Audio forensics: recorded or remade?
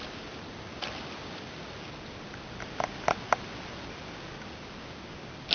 recorded